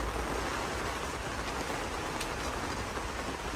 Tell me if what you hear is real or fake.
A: real